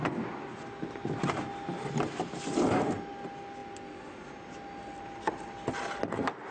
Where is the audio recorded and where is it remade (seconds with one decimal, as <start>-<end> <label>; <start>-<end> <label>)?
0.0-6.5 recorded